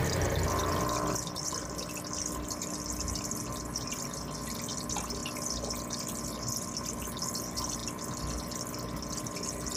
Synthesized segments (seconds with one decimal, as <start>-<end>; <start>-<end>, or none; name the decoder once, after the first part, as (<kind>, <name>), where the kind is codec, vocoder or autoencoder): none